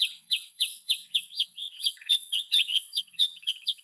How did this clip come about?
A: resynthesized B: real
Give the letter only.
A